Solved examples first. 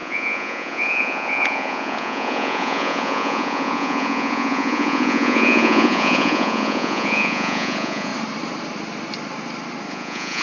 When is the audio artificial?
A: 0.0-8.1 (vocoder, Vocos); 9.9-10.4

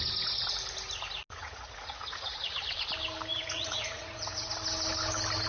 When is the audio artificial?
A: 1.4-2.6 (vocoder, Vocos); 3.3-4.5

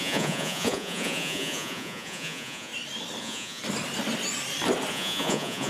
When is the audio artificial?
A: 0.0-2.7 (vocoder, Vocos); 3.2-3.6; 4.9-5.7

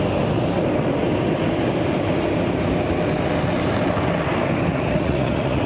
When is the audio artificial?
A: 4.7-5.7 (vocoder, Vocos)

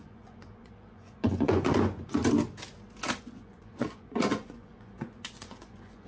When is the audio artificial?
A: 0.0-2.2 (vocoder, Vocos); 3.2-6.1

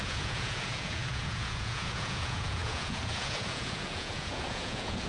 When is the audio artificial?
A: 0.0-5.1 (vocoder, Vocos)

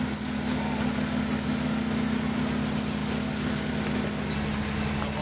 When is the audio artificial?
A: none

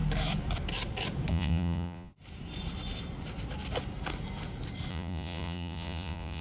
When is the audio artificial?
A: 1.3-2.1 (vocoder, Vocos); 4.9-6.4